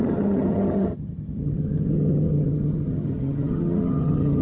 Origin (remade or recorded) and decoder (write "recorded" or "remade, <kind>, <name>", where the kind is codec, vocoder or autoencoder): remade, vocoder, HiFi-GAN